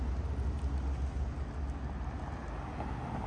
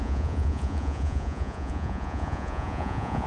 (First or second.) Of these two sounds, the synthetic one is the second